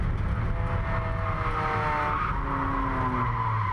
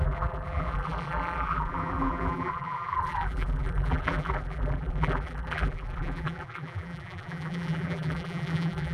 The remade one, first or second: second